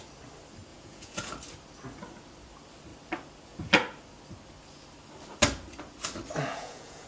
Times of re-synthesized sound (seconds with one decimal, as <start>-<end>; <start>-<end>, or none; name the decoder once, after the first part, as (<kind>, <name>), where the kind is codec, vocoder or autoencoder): 0.7-1.3 (vocoder, Vocos); 6.5-7.1